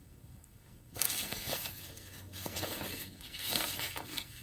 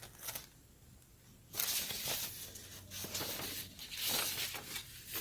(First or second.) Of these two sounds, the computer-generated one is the first